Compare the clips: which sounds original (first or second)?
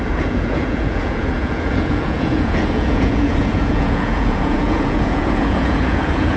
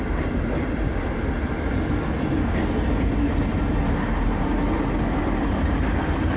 second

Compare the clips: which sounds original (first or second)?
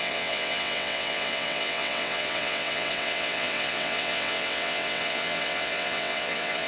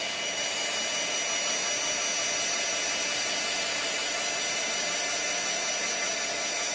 second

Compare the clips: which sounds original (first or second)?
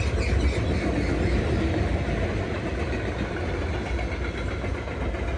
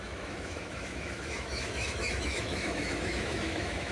first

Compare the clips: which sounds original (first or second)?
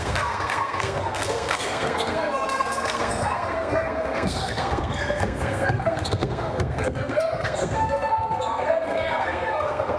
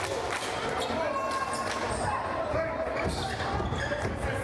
second